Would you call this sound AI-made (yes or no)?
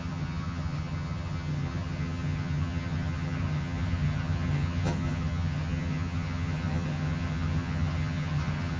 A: yes